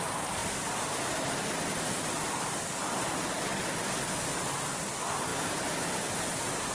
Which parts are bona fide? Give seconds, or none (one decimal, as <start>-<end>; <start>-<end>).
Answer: 0.0-6.7